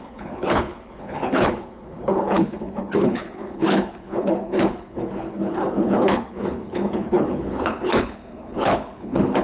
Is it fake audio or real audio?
fake